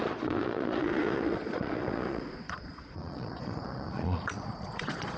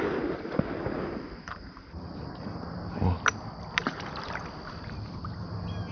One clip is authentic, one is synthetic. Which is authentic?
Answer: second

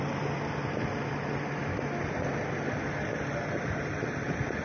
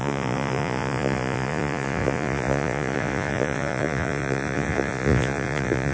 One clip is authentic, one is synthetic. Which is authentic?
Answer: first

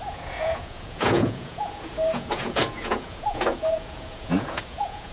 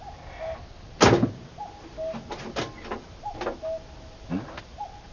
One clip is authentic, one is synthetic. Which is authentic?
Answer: second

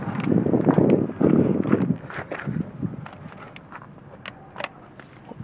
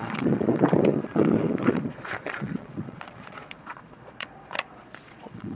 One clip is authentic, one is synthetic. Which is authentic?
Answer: first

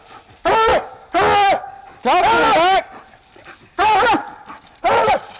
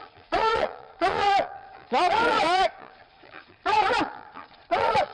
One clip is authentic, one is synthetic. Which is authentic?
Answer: first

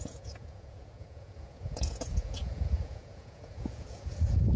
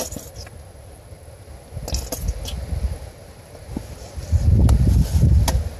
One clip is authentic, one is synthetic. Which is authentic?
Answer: second